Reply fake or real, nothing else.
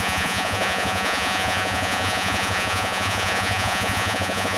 fake